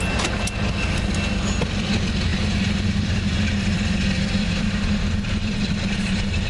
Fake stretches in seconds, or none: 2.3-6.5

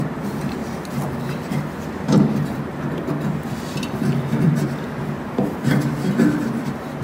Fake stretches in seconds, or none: 0.0-0.6; 1.7-2.7; 6.4-7.0

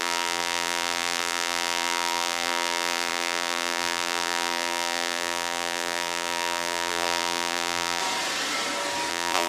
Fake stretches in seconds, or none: 0.0-8.0; 9.1-9.5

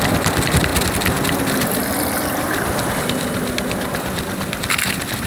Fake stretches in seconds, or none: none